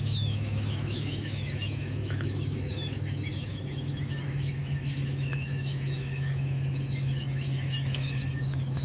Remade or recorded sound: remade